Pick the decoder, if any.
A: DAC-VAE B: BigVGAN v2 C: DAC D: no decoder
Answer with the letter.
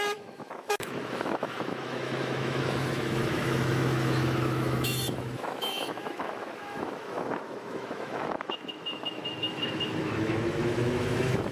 A